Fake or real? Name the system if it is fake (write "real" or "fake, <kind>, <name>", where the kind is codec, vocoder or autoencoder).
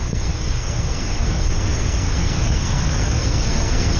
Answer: fake, codec, SNAC